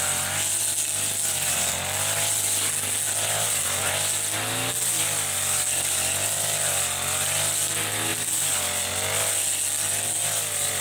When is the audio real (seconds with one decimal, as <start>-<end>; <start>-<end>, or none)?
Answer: 0.0-10.8